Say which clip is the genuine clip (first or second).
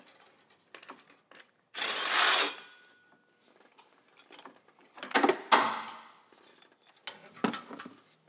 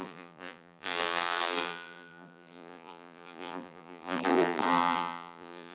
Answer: first